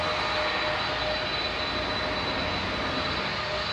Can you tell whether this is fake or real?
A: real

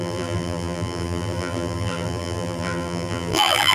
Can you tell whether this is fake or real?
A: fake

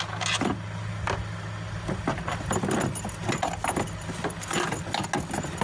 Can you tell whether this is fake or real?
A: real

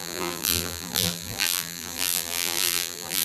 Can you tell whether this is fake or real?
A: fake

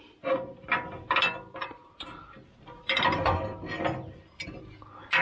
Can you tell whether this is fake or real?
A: real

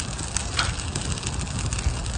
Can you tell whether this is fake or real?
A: real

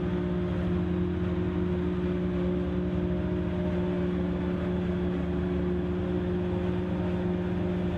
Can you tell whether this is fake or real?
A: real